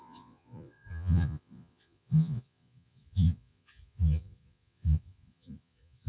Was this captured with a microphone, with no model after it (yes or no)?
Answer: no